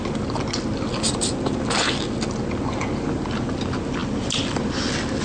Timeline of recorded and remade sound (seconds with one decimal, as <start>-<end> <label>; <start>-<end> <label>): 0.0-5.2 recorded